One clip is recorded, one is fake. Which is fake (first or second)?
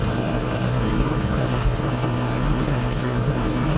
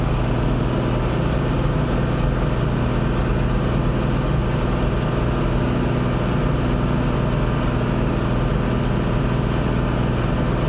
first